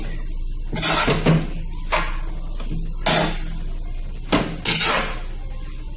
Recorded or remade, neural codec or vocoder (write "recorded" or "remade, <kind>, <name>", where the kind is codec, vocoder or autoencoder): recorded